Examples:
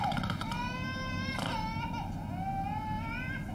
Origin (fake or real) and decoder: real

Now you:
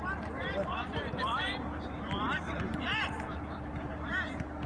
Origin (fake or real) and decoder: fake, vocoder, BigVGAN v2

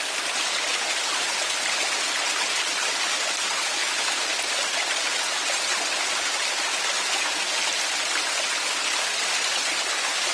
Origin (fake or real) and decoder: real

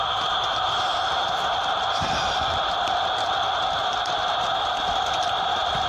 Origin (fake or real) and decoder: real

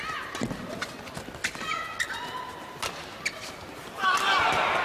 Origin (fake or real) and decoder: real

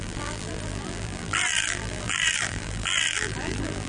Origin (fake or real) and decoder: fake, vocoder, BigVGAN v2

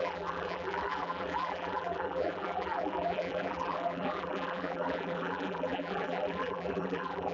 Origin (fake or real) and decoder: fake, vocoder, BigVGAN v2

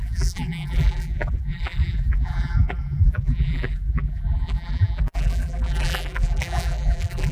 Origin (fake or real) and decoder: fake, vocoder, BigVGAN v2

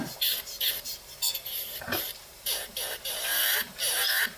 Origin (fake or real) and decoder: fake, vocoder, BigVGAN v2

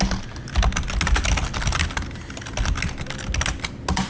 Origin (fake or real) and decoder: real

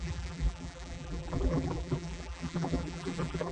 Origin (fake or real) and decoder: fake, vocoder, BigVGAN v2